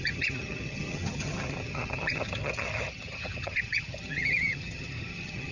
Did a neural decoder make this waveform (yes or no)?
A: yes